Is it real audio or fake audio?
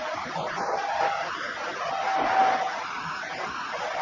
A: real